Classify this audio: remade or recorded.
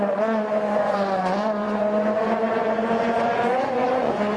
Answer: remade